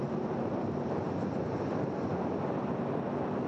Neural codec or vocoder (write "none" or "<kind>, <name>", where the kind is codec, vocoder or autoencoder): none